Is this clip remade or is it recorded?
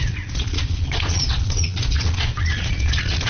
remade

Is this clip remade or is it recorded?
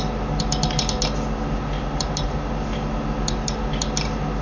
recorded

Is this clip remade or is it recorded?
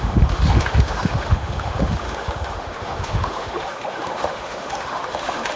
remade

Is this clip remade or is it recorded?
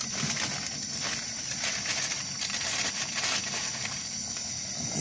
recorded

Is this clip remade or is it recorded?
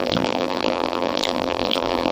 remade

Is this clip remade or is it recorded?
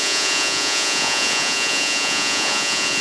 remade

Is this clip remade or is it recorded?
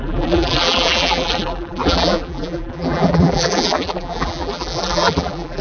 remade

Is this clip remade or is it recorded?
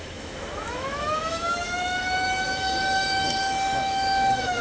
remade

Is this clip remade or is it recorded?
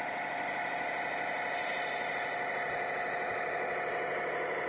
recorded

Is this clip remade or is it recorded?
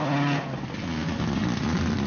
recorded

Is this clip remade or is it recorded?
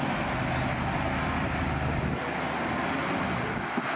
recorded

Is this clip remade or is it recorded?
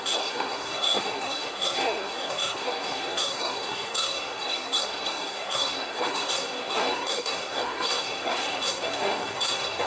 remade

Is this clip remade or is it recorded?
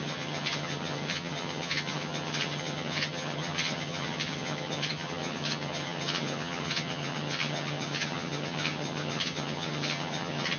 remade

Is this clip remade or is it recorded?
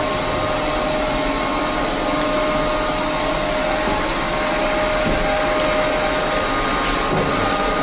recorded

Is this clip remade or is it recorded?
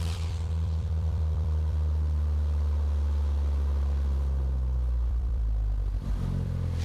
remade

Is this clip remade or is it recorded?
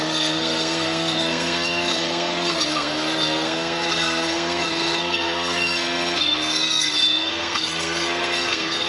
remade